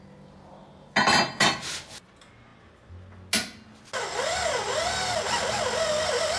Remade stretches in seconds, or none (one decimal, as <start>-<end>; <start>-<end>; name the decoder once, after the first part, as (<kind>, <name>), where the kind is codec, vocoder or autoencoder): none